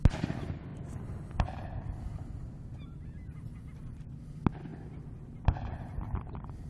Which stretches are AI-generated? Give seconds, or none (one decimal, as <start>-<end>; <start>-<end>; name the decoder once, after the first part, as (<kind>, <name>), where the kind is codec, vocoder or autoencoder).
none